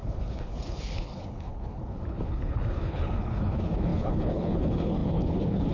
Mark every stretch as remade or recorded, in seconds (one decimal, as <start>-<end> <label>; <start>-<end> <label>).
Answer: 0.0-5.7 remade